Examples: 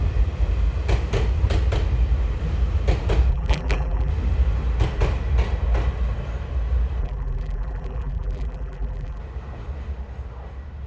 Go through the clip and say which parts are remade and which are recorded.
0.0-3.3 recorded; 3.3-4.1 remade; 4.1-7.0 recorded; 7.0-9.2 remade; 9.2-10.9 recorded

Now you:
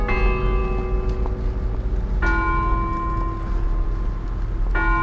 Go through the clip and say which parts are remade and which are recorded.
0.0-5.0 recorded

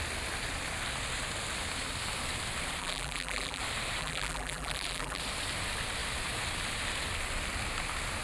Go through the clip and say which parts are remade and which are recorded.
0.0-2.8 recorded; 2.8-3.6 remade; 3.6-4.0 recorded; 4.0-5.2 remade; 5.2-8.2 recorded

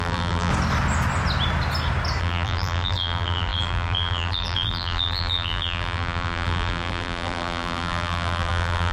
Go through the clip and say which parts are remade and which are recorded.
0.0-0.5 remade; 0.5-2.2 recorded; 2.2-8.9 remade